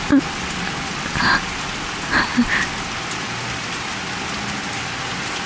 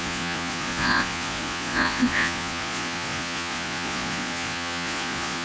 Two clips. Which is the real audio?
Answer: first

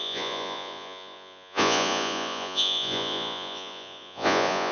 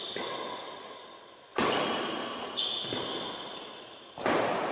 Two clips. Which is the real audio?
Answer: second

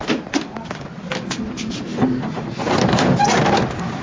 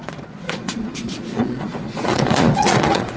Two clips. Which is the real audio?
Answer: first